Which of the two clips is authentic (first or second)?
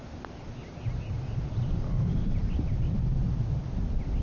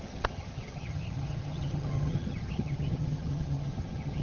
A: first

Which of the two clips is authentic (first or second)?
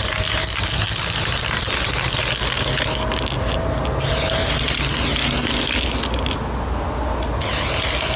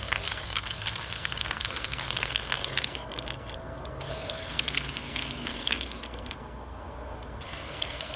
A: first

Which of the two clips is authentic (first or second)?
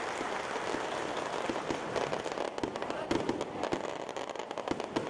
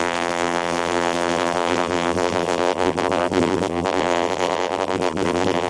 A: first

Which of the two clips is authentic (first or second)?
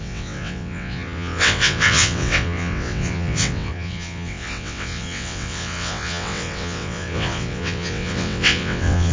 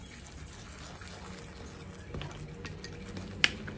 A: second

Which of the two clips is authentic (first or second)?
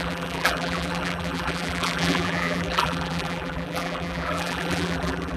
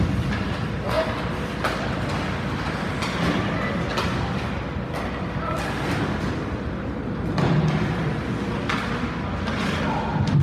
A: second